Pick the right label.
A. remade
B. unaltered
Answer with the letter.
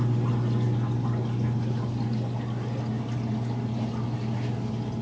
B